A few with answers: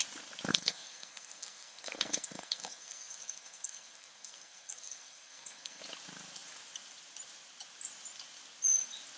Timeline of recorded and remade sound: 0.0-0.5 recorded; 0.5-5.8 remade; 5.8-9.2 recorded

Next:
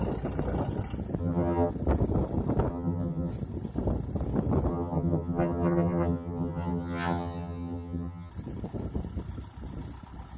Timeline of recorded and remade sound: 0.0-1.2 recorded; 1.2-1.7 remade; 1.7-2.7 recorded; 2.7-3.3 remade; 3.3-4.7 recorded; 4.7-8.3 remade; 8.3-10.4 recorded

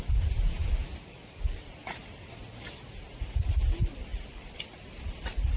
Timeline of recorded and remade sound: 0.0-5.6 recorded

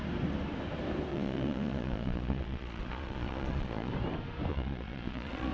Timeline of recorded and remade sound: 0.0-1.1 recorded; 1.1-3.9 remade; 3.9-4.5 recorded; 4.5-5.5 remade

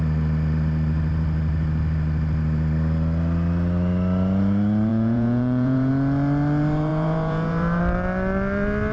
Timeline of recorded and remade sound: 0.0-4.9 recorded; 4.9-5.9 remade; 5.9-6.9 recorded; 6.9-7.8 remade; 7.8-8.9 recorded

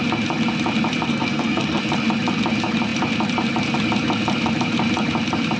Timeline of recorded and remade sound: 0.0-1.1 recorded; 1.1-1.8 remade; 1.8-5.6 recorded

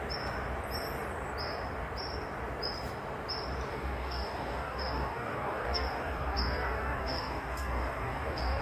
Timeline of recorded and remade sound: 0.0-3.7 recorded; 3.7-8.6 remade

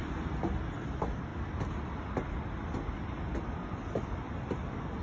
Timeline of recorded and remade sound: 0.0-5.0 recorded